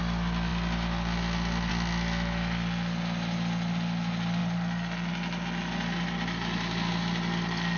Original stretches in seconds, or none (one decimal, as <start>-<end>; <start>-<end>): 0.0-7.8